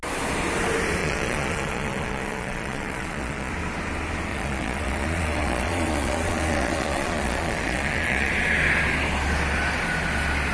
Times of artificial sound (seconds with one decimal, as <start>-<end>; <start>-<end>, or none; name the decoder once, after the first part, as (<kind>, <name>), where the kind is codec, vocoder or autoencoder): 1.0-3.5 (vocoder, Vocos); 4.3-8.3